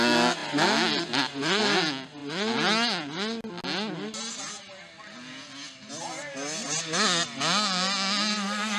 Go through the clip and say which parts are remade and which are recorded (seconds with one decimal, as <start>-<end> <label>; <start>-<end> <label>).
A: 0.0-8.8 recorded